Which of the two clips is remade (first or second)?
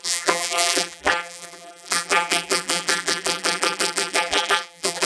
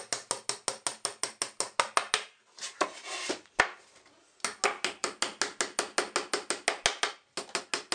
first